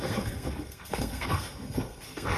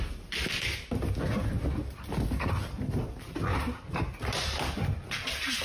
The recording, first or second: second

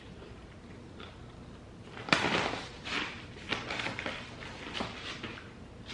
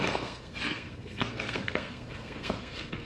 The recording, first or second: first